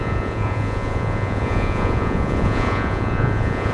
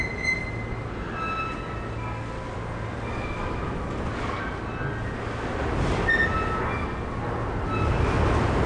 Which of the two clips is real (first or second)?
second